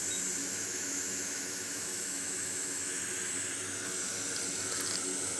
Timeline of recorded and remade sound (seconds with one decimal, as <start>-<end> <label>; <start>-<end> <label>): 0.0-0.4 recorded; 0.4-3.0 remade; 3.0-5.4 recorded